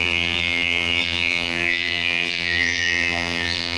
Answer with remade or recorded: remade